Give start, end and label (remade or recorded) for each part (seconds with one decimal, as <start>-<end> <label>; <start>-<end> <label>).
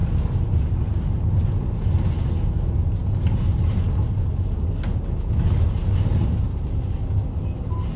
0.0-8.0 recorded